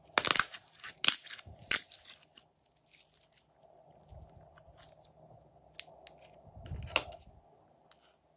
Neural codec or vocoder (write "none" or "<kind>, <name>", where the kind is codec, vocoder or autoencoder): none